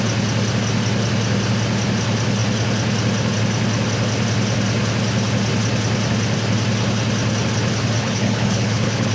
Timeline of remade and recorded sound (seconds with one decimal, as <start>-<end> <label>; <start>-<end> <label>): 0.0-8.0 recorded; 8.0-9.1 remade